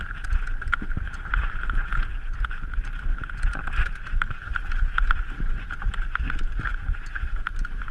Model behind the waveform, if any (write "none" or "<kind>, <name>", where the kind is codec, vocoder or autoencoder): none